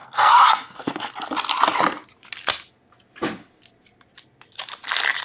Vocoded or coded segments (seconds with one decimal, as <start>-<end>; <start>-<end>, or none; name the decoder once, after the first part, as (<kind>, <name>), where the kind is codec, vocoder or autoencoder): 0.0-1.1 (codec, SNAC)